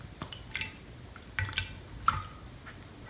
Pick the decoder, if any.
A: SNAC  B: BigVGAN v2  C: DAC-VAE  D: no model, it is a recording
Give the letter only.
D